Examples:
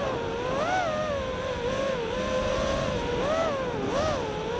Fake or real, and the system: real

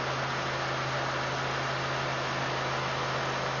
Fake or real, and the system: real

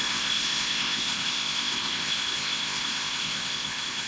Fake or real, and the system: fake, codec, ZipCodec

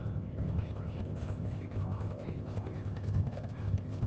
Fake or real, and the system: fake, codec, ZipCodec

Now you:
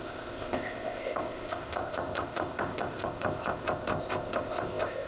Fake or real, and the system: fake, codec, ZipCodec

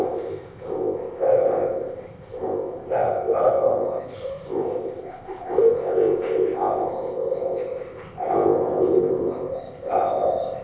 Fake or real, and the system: fake, codec, ZipCodec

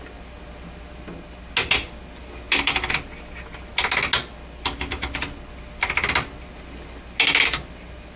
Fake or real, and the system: real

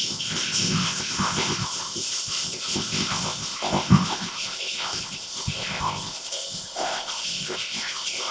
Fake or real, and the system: fake, codec, ZipCodec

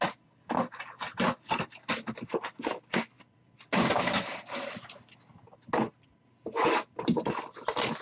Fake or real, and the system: real